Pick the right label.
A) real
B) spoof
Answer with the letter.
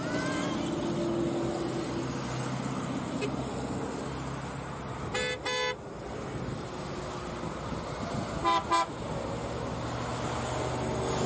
A